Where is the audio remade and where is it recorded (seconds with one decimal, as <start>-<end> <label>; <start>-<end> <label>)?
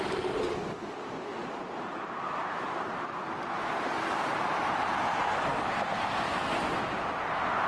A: 0.0-1.3 recorded; 1.3-4.0 remade; 4.0-7.7 recorded